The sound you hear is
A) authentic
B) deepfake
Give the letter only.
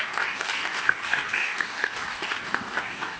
B